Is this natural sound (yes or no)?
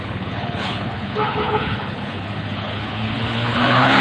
no